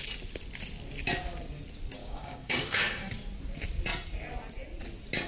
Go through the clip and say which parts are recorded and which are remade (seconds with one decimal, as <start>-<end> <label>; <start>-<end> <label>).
0.0-2.0 recorded; 2.0-3.1 remade; 3.1-5.3 recorded